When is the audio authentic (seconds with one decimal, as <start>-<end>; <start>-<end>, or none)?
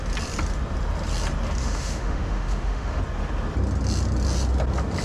0.0-1.6; 3.0-5.0